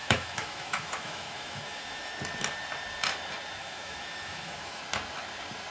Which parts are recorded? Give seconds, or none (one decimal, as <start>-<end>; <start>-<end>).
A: 2.1-3.6; 4.8-5.7